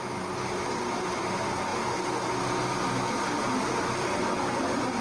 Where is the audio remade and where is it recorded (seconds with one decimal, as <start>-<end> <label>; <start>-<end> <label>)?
0.0-5.0 recorded